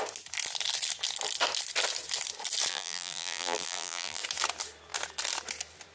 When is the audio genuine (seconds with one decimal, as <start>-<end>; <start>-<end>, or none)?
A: 0.0-2.7; 4.2-5.9